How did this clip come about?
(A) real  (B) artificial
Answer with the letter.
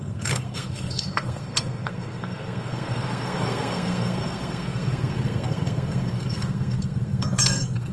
B